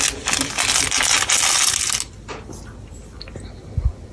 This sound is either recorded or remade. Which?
recorded